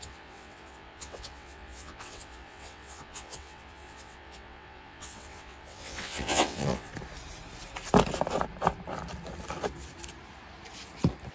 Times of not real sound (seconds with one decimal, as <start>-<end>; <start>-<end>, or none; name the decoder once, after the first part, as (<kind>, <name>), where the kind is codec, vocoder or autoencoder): 0.0-6.9 (vocoder, WaveNeXt)